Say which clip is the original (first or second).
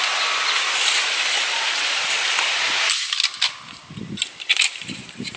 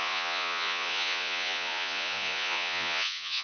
first